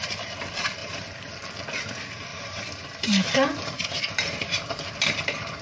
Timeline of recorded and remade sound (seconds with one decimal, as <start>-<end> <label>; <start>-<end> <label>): 0.0-0.8 recorded; 0.8-1.5 remade; 1.5-2.3 recorded; 2.3-5.6 remade